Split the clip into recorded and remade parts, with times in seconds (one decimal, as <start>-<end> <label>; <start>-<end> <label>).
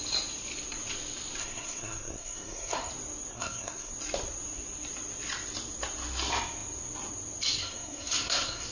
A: 0.0-1.4 recorded; 1.4-2.9 remade; 2.9-3.3 recorded; 3.3-3.9 remade; 3.9-7.6 recorded; 7.6-8.7 remade